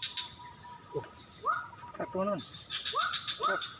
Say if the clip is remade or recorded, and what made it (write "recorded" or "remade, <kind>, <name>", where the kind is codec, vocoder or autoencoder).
recorded